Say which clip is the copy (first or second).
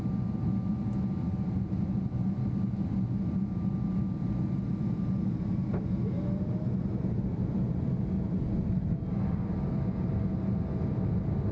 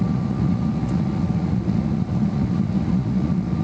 second